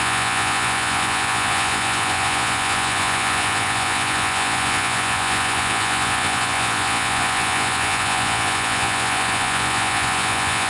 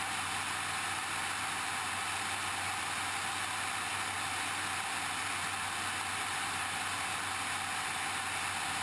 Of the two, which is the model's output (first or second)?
first